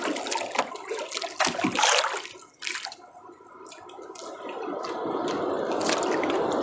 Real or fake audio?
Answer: real